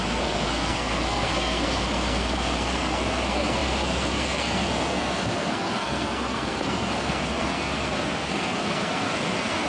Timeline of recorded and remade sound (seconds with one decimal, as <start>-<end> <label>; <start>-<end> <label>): 0.0-9.7 remade